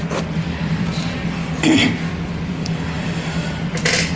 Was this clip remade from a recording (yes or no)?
yes